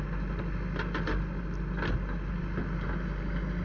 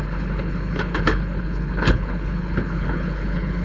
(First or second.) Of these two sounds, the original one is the first